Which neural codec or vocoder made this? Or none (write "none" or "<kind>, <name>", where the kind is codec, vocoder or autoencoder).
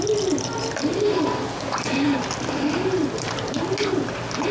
none